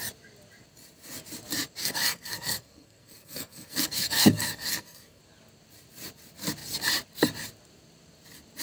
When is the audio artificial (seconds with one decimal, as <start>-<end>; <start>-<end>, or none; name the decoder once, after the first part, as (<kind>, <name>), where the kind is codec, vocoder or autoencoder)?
1.8-5.2 (codec, SNAC)